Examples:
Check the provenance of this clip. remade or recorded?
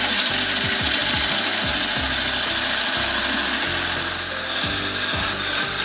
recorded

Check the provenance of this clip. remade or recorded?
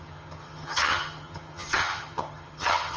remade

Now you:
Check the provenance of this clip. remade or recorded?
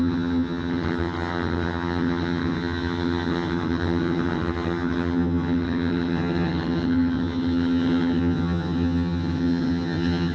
remade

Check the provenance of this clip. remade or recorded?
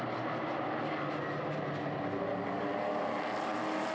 recorded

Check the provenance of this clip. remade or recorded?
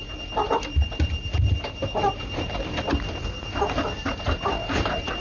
recorded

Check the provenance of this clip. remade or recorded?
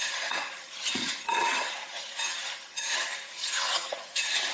remade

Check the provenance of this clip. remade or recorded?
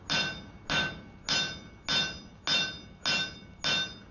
recorded